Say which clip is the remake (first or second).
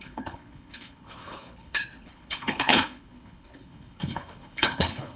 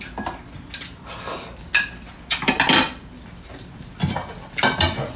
first